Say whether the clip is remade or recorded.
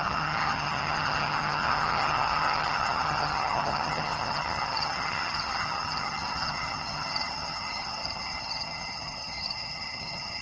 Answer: remade